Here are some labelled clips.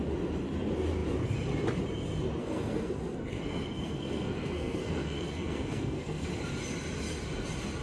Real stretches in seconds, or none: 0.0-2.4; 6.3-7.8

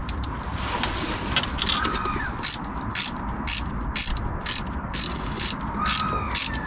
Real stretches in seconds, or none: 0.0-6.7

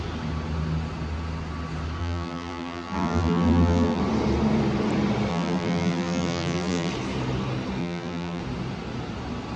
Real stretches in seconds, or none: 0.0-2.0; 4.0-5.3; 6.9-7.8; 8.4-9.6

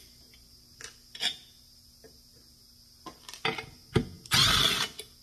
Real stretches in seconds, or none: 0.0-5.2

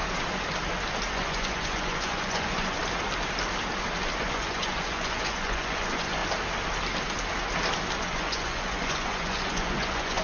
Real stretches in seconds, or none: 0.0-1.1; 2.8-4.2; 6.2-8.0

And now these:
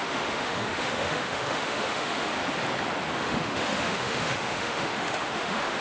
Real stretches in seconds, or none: 2.3-3.2